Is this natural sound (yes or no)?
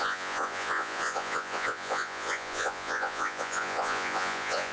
no